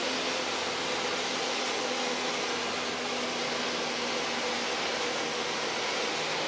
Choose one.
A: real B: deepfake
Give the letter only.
A